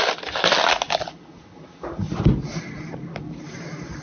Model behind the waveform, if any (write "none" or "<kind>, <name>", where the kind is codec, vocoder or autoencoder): none